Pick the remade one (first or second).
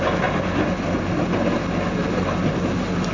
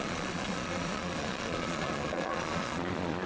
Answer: second